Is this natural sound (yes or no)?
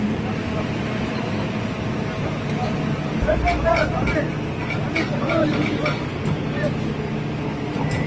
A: yes